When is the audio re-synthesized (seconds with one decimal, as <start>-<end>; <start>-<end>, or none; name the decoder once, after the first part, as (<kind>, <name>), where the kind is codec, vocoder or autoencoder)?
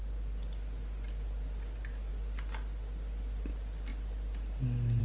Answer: none